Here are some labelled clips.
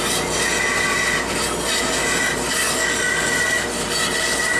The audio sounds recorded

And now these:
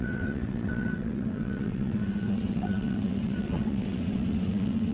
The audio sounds remade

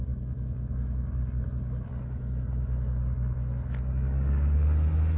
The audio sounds recorded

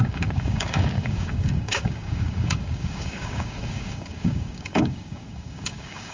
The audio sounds remade